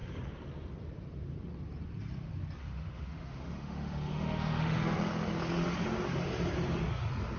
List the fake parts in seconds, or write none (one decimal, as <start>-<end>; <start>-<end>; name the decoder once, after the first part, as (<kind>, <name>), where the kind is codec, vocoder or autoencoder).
2.6-5.0 (autoencoder, DAC-VAE)